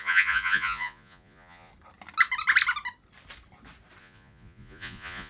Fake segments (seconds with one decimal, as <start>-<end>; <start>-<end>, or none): 0.0-1.7; 4.0-5.3

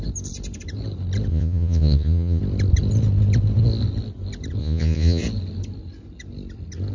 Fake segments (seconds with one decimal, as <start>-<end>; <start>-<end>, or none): 1.3-2.4; 4.6-5.2

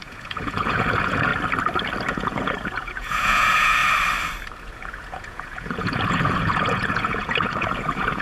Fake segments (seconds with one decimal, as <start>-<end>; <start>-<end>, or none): 0.0-1.3; 2.1-3.8; 4.6-8.2

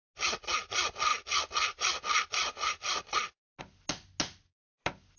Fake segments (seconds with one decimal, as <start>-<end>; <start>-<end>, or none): none

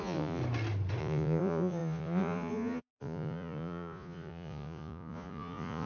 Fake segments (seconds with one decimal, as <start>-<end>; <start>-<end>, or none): 0.0-0.4; 1.0-5.9